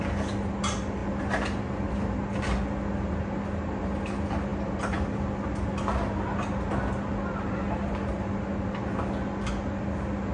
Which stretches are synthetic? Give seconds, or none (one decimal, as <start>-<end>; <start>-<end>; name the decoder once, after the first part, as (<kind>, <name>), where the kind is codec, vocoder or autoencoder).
none